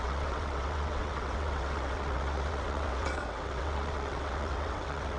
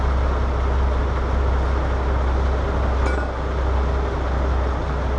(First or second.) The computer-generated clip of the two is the first